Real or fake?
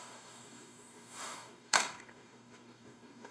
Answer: fake